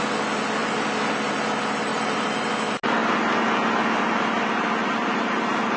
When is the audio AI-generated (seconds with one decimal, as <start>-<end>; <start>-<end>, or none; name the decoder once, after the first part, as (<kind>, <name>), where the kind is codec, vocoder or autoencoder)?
1.9-2.5 (vocoder, BigVGAN v2); 4.8-5.8